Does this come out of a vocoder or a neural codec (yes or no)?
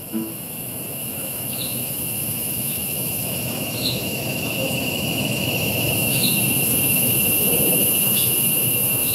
yes